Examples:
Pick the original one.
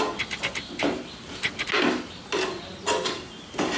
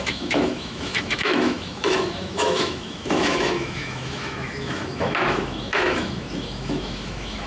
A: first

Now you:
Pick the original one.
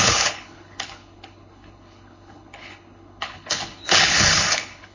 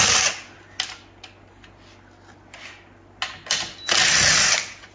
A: second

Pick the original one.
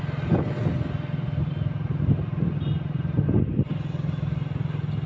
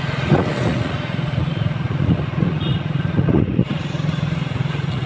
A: first